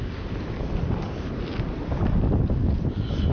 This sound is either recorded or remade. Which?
recorded